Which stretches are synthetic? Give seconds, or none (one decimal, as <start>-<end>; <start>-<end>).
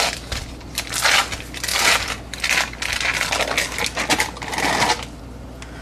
none